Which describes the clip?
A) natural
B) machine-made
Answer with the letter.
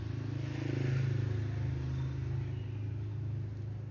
A